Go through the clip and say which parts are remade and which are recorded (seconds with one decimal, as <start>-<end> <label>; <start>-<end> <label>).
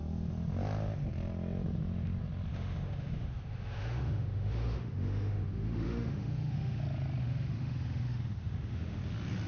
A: 0.0-2.5 recorded; 2.5-6.8 remade; 6.8-7.2 recorded; 7.2-9.0 remade; 9.0-9.5 recorded